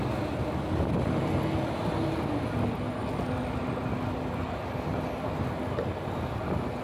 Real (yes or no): yes